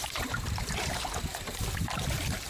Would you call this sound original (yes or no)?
no